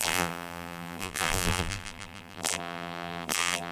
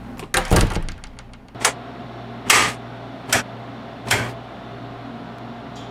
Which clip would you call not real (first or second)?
first